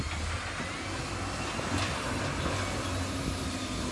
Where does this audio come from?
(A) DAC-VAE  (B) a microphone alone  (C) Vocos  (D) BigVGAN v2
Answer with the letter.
B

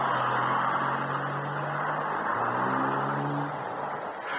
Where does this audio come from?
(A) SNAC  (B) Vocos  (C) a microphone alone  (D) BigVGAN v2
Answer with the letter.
C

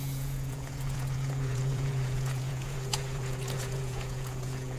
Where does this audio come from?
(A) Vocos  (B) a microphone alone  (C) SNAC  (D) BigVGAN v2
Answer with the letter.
A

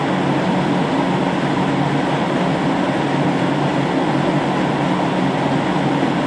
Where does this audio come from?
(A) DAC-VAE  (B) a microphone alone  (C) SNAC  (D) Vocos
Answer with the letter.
B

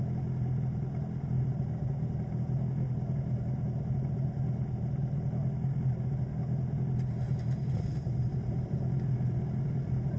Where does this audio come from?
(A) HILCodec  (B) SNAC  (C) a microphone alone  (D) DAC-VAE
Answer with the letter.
C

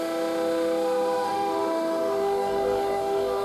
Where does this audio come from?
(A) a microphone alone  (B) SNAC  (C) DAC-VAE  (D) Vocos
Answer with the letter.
C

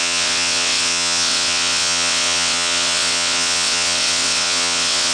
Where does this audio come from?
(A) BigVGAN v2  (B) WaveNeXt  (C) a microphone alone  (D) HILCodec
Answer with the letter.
B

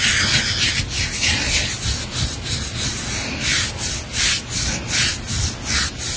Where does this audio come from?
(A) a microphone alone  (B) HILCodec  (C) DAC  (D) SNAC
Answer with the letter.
A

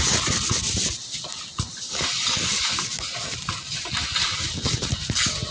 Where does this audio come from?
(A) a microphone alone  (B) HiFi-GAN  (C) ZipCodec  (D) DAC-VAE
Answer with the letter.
A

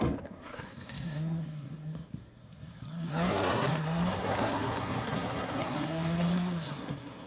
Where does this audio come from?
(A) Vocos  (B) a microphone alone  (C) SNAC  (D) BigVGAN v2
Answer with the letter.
C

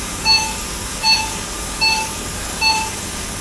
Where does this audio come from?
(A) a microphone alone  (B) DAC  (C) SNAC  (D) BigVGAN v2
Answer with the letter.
B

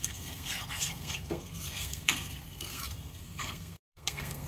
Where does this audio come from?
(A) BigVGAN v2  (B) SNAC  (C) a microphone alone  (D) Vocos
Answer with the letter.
B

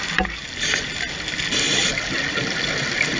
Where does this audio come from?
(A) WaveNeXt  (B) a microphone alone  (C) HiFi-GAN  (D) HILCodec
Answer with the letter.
B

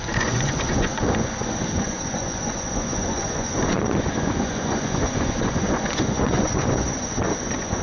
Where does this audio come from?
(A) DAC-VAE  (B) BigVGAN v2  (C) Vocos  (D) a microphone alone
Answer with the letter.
C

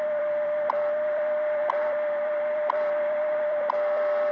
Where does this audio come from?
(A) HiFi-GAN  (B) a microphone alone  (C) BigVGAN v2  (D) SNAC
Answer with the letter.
C